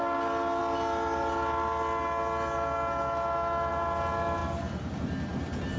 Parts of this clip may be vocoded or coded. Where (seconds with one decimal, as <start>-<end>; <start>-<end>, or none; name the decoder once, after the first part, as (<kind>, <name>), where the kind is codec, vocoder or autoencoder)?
none